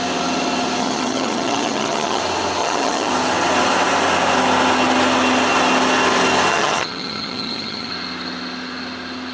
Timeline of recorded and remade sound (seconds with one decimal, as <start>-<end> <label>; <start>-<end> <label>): 0.0-0.8 recorded; 0.8-2.2 remade; 2.2-2.6 recorded; 2.6-3.1 remade; 3.1-6.5 recorded; 6.5-7.9 remade; 7.9-9.3 recorded